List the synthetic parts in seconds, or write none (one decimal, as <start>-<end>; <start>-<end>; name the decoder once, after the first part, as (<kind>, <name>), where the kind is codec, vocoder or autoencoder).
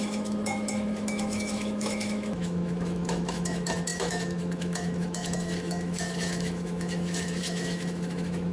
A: 0.0-8.5 (autoencoder, DAC-VAE)